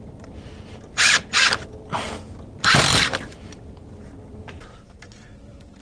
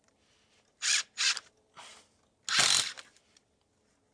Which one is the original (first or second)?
second